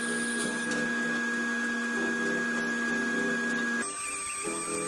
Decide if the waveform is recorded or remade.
recorded